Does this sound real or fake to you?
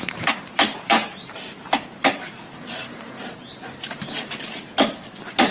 fake